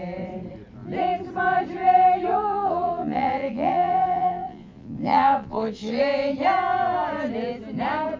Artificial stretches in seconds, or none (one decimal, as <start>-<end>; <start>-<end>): 2.3-6.0